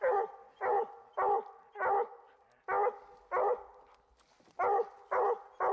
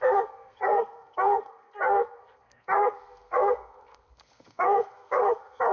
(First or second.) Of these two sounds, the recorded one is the first